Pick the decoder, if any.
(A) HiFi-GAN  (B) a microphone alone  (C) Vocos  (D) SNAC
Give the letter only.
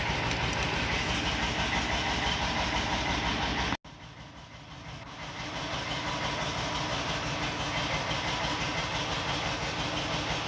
B